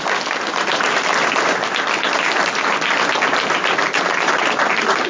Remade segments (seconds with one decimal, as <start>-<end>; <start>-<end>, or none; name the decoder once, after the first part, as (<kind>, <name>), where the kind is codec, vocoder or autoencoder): none